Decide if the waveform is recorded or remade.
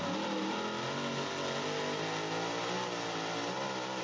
recorded